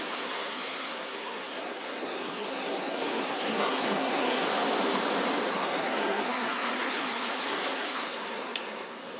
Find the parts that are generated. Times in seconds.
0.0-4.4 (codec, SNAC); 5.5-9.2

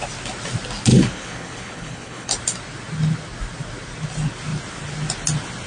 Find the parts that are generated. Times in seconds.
0.9-2.3 (codec, HILCodec)

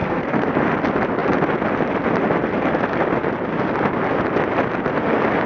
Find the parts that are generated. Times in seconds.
0.0-0.5 (codec, SNAC)

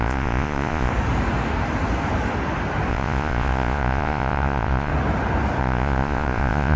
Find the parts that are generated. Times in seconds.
0.0-0.9 (vocoder, Vocos); 2.9-4.9; 5.6-6.8